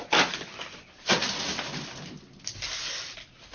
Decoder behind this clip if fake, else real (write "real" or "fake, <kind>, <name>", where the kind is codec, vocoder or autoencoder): real